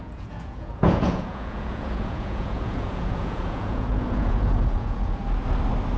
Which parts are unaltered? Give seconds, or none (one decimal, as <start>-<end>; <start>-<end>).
5.2-6.0